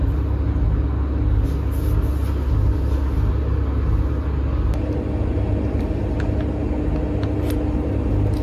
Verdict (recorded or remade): recorded